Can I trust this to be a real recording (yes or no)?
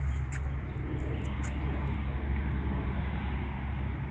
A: yes